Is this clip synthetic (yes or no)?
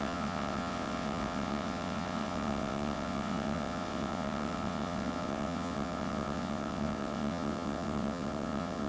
yes